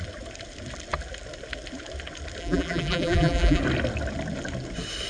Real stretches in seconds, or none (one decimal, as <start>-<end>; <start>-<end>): 0.0-2.4; 3.6-5.1